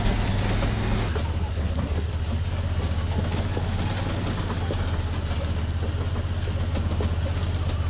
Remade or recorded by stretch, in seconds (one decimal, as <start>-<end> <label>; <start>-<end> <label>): 0.0-1.5 recorded; 1.5-2.1 remade; 2.1-7.9 recorded